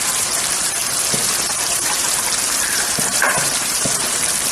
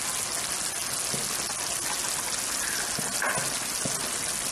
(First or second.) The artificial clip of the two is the first